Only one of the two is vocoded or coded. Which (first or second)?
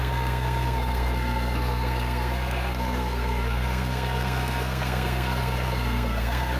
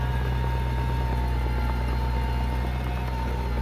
first